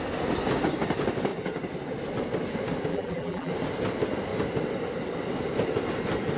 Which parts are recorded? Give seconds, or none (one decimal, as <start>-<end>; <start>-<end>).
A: 0.0-2.9; 3.5-6.4

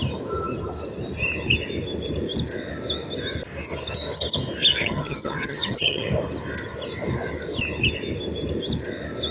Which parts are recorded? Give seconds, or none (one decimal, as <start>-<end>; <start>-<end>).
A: 0.0-4.7; 6.1-9.3

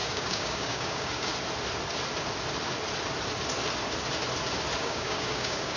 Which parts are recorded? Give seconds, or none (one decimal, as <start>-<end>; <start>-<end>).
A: 1.3-4.8

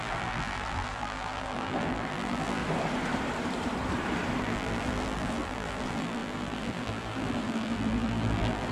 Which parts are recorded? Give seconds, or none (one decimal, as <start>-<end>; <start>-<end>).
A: 2.6-4.4